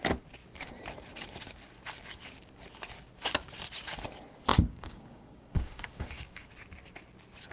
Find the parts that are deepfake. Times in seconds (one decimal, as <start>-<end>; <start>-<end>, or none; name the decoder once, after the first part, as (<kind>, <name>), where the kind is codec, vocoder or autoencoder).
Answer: 4.5-6.5 (codec, DAC)